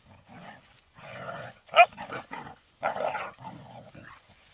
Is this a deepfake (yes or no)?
yes